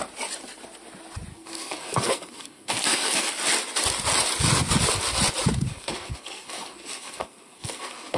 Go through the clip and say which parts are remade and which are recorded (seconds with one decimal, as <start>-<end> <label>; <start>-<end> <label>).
0.0-1.3 recorded; 1.3-3.3 remade; 3.3-5.7 recorded; 5.7-8.2 remade